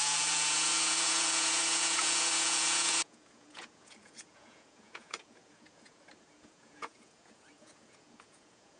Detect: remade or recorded remade